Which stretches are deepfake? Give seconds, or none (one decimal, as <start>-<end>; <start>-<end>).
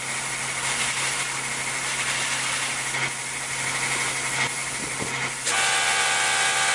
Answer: none